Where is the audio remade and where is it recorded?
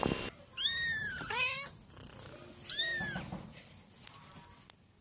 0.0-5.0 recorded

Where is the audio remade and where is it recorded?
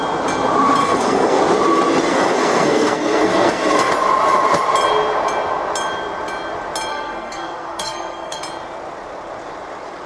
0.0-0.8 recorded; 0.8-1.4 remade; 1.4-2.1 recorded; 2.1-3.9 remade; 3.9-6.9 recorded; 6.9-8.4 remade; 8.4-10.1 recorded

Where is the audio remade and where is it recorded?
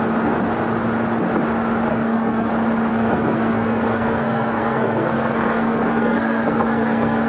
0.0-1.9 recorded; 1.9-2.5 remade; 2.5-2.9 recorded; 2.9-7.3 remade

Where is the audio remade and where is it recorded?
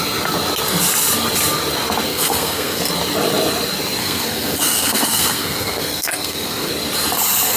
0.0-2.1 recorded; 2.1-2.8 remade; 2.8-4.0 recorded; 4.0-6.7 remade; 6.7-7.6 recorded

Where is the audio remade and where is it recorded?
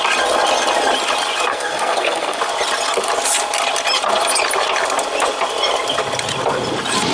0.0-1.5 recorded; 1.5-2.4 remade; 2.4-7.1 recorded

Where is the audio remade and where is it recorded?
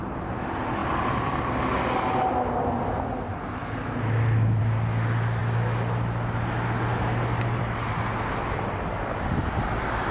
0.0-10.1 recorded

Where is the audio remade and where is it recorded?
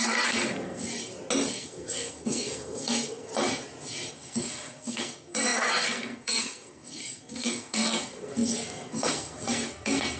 0.0-0.9 remade; 0.9-1.5 recorded; 1.5-3.3 remade; 3.3-4.1 recorded; 4.1-10.2 remade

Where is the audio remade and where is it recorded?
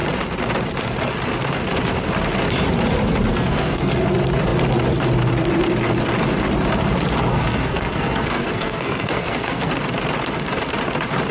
0.0-3.3 recorded; 3.3-4.0 remade; 4.0-7.3 recorded; 7.3-9.7 remade; 9.7-11.3 recorded